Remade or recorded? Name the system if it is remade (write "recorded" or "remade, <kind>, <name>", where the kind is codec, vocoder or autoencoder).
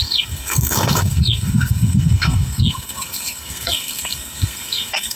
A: remade, codec, SNAC